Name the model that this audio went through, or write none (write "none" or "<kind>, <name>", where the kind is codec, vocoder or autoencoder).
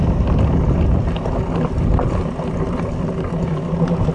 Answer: none